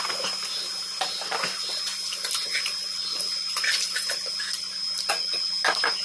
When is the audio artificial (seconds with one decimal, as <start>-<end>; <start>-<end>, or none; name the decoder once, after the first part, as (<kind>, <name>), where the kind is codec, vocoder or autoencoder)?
none